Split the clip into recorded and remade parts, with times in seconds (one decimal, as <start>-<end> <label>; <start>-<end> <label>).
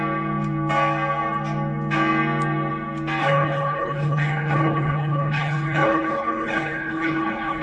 0.0-3.2 recorded; 3.2-7.6 remade